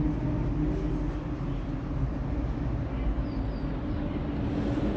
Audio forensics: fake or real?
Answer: real